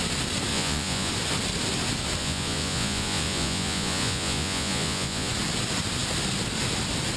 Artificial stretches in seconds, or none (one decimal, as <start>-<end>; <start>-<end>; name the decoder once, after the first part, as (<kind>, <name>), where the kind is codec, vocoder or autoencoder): 0.5-1.1 (vocoder, Vocos); 2.2-5.3

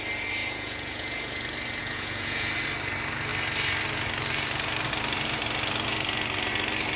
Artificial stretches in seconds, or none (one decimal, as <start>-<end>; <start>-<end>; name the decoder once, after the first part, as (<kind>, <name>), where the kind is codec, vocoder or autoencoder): 0.4-1.4 (vocoder, Vocos); 1.8-2.5

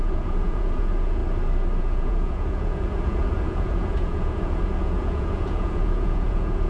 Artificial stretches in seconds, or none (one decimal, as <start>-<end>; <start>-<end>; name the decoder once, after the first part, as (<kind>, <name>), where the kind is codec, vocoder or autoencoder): 0.0-1.2 (vocoder, Vocos); 1.8-6.7

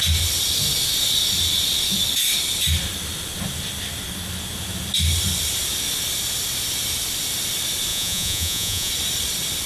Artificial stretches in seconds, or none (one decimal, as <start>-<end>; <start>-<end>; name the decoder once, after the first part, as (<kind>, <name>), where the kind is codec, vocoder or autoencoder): 7.9-8.9 (vocoder, Vocos)